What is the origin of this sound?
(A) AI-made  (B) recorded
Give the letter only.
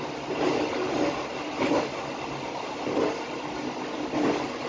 B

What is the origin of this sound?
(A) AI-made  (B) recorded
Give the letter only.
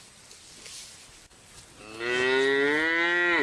B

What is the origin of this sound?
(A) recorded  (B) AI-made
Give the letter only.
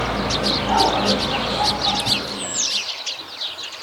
A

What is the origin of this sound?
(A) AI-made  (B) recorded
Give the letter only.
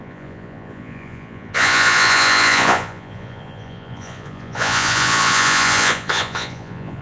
A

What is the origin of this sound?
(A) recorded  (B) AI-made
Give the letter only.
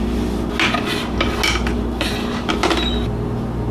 A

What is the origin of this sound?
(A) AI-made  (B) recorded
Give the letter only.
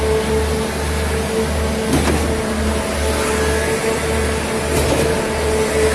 B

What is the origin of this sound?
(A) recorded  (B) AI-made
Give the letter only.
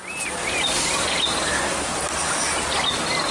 A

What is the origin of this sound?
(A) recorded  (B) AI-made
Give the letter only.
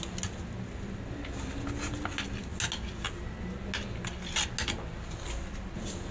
A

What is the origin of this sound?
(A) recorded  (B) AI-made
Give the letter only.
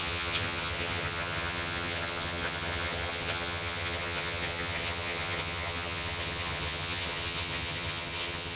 B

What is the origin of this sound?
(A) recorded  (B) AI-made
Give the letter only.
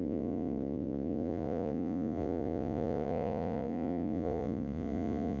B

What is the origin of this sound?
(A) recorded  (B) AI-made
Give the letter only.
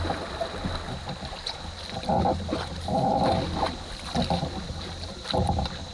A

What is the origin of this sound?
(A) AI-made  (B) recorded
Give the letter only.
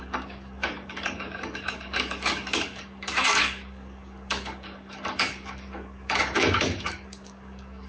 A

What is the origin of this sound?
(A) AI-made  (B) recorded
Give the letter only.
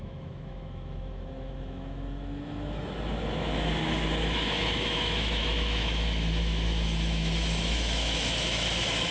A